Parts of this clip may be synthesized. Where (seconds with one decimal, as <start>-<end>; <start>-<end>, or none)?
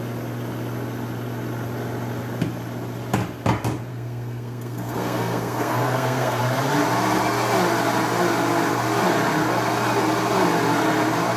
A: 3.9-6.4